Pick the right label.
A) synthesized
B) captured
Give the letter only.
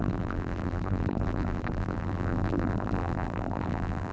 A